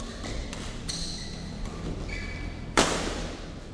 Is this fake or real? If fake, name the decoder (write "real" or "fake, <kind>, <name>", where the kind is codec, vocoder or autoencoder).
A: real